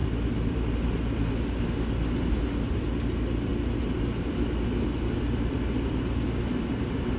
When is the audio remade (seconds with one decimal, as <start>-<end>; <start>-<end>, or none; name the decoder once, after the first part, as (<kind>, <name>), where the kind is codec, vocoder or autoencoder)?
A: none